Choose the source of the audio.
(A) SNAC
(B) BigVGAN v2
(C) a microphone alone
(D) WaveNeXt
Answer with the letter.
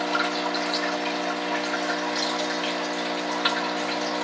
C